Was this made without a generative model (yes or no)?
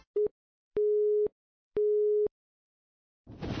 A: yes